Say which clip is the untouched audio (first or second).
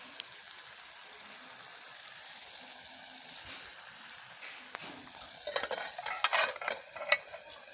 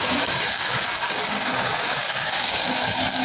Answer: first